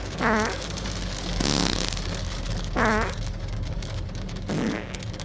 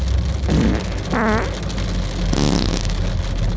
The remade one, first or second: first